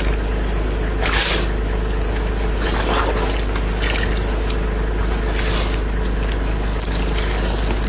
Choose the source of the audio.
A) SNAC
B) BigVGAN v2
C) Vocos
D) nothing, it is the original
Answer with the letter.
D